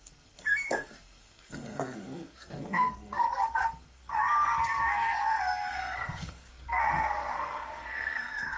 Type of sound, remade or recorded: remade